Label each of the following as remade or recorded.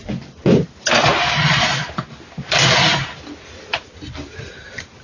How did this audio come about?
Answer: recorded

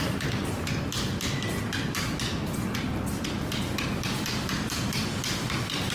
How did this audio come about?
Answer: recorded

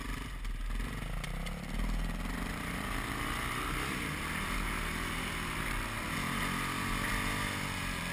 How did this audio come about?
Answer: recorded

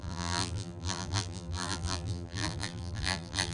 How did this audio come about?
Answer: remade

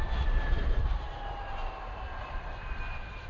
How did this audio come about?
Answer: remade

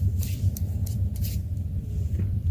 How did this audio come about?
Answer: remade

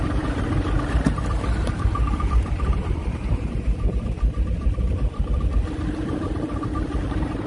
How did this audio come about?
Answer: remade